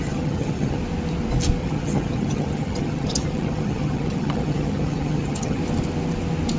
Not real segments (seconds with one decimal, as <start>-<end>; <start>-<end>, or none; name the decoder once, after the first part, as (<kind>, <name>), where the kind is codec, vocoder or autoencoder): 0.0-0.8 (vocoder, HiFi-GAN); 1.6-5.6